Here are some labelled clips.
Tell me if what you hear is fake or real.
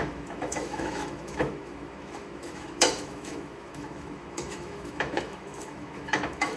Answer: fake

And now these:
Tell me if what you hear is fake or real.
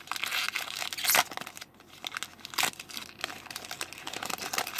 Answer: real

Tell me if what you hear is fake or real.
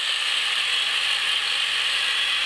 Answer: real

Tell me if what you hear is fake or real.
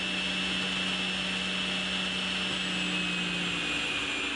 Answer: real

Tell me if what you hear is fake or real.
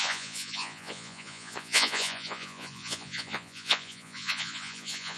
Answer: fake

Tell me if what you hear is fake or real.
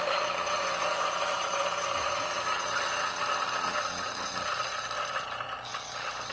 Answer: real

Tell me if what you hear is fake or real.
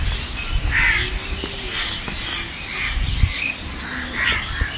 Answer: real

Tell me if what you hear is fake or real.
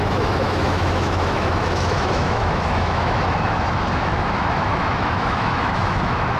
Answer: fake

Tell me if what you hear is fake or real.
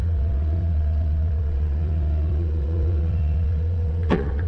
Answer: fake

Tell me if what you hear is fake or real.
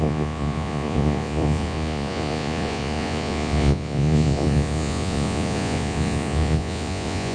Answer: fake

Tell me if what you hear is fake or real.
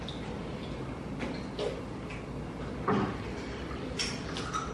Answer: real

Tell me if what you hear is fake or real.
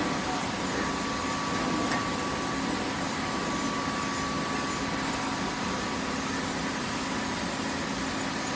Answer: real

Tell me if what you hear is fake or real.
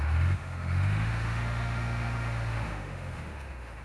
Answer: fake